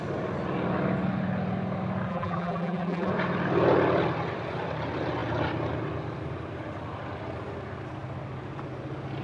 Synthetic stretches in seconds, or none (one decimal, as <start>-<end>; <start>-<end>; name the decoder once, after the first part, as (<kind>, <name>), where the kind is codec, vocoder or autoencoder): 2.1-3.1 (vocoder, BigVGAN v2)